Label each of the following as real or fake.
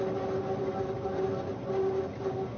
real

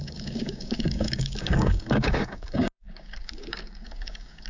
fake